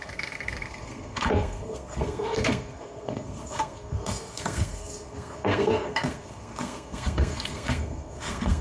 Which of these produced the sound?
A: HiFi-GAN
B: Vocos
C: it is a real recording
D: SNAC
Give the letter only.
D